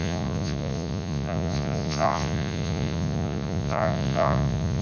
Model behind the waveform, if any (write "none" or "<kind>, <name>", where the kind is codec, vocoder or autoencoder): vocoder, Vocos